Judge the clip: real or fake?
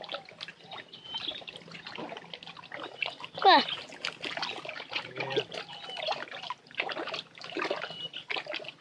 real